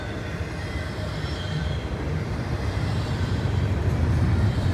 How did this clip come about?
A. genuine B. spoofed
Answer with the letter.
B